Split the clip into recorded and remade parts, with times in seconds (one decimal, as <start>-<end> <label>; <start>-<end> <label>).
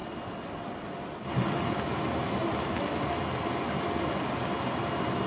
0.0-5.3 recorded